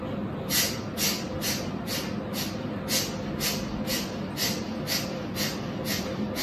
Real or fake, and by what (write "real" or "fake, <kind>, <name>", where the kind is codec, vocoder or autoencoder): real